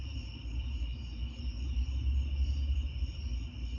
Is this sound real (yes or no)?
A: yes